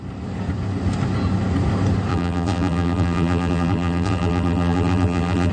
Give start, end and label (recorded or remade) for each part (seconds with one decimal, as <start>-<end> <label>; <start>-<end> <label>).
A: 0.0-2.1 recorded; 2.1-5.5 remade